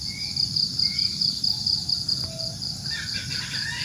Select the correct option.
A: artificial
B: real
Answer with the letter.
B